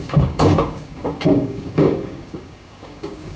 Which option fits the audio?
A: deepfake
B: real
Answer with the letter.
A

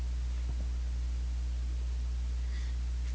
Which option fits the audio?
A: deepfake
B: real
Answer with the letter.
B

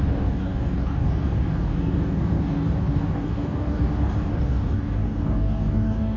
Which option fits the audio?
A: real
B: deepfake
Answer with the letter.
B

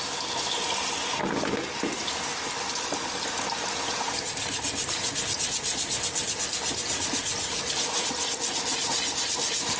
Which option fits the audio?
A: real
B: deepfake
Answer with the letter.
A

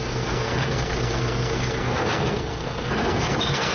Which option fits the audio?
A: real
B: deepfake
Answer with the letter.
B